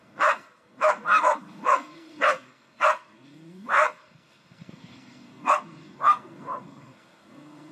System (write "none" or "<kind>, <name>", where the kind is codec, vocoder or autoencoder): codec, SNAC